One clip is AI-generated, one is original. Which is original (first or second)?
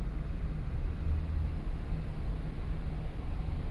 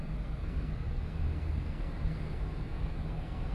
first